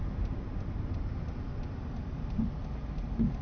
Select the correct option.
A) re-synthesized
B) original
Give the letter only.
B